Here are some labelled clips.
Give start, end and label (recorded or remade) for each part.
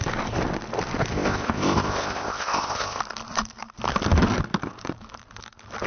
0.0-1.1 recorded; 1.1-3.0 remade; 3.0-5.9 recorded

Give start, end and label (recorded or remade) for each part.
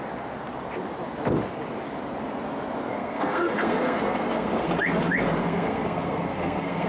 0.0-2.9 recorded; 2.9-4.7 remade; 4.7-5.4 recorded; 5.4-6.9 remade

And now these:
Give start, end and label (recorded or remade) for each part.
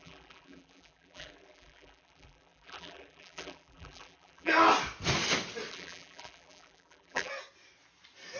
0.0-4.5 remade; 4.5-5.7 recorded; 5.7-7.3 remade; 7.3-8.4 recorded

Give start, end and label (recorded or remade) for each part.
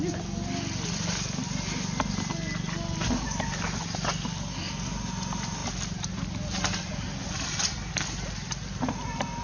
0.0-9.4 recorded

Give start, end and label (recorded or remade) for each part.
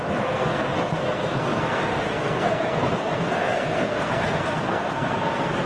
0.0-5.7 remade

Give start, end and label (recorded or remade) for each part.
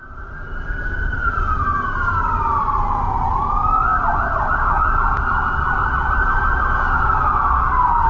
0.0-3.4 remade; 3.4-6.2 recorded; 6.2-7.3 remade; 7.3-8.1 recorded